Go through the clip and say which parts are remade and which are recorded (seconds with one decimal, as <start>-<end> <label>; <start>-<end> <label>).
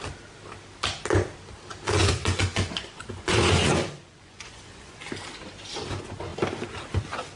0.0-2.0 recorded; 2.0-5.1 remade; 5.1-7.4 recorded